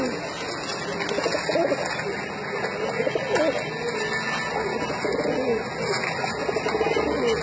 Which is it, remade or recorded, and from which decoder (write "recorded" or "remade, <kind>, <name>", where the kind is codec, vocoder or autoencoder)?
recorded